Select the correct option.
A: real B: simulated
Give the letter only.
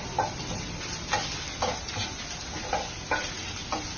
A